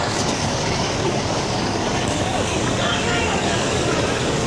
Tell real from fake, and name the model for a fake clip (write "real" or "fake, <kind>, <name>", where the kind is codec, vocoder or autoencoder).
fake, codec, DAC